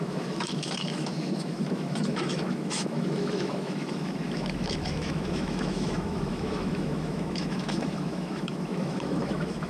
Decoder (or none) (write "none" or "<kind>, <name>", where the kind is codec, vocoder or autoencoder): autoencoder, DAC-VAE